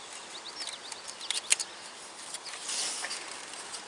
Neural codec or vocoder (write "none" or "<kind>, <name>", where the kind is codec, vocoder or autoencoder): none